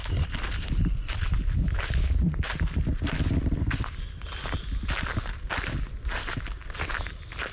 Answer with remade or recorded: recorded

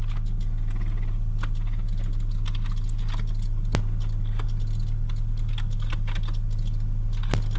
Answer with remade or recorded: recorded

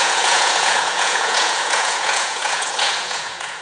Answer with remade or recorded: remade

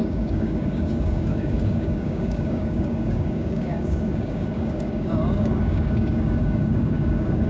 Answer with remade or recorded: remade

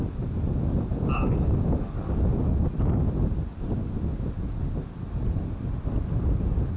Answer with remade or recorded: recorded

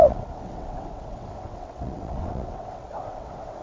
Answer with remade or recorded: remade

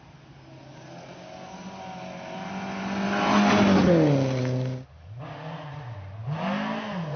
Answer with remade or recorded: recorded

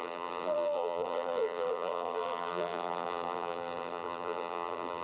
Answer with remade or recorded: remade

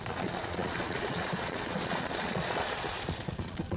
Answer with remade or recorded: remade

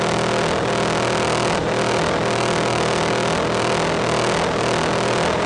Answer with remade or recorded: recorded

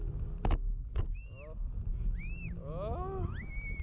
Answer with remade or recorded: recorded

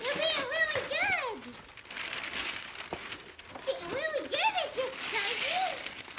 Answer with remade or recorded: recorded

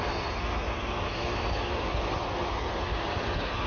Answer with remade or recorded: recorded